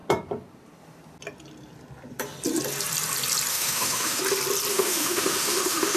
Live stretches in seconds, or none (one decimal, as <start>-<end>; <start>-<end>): 0.0-3.5; 4.2-4.7